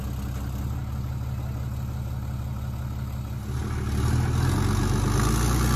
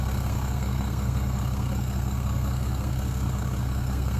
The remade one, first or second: second